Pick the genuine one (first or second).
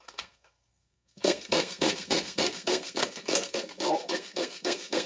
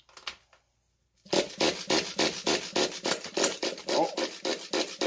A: second